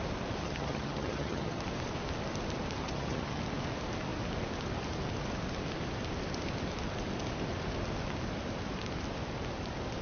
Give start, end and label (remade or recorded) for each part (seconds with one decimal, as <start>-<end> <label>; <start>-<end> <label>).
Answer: 0.0-0.4 recorded; 0.4-1.6 remade; 1.6-2.8 recorded; 2.8-3.4 remade; 3.4-10.0 recorded